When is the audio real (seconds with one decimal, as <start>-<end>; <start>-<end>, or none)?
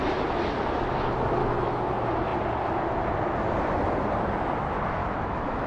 0.0-1.4; 1.9-5.0